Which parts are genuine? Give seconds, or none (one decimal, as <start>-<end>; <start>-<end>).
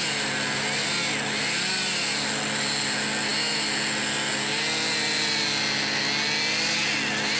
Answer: 0.0-7.4